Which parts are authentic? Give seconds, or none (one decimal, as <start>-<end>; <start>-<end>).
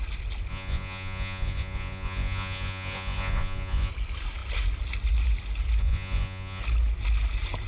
0.0-0.5; 3.9-5.8; 6.6-7.7